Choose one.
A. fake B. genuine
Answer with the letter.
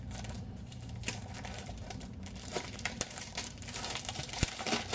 A